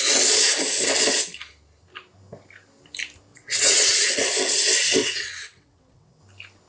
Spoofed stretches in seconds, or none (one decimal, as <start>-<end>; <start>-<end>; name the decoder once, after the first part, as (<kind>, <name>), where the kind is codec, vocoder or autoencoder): 3.3-4.1 (vocoder, WaveNeXt); 5.0-6.2